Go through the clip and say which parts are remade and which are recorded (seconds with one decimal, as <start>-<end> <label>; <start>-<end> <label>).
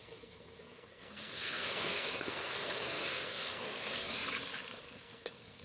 0.0-4.1 remade; 4.1-4.8 recorded; 4.8-5.6 remade